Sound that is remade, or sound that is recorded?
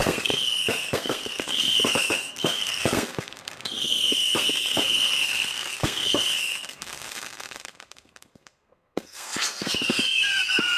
remade